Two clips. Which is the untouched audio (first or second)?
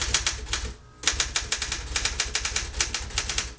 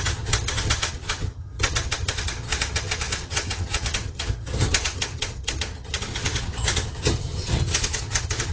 first